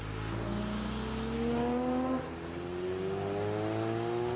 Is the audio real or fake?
real